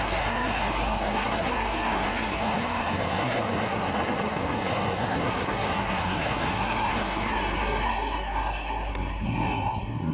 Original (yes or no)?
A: no